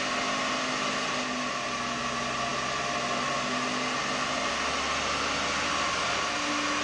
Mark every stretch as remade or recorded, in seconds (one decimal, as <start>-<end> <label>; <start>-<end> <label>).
0.0-6.8 recorded